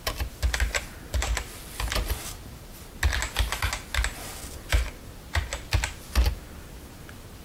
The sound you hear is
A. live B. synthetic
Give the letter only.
A